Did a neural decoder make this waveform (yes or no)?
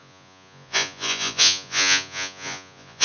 yes